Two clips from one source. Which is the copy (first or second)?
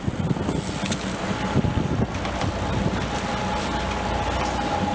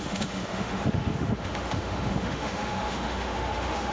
second